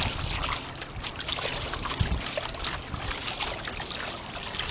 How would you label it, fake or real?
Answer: real